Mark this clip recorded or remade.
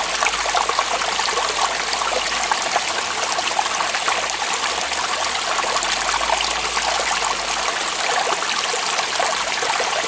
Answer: recorded